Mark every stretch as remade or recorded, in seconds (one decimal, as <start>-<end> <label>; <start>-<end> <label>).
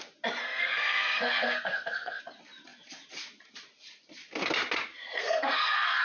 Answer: 0.0-0.4 recorded; 0.4-2.2 remade; 2.2-5.2 recorded; 5.2-6.0 remade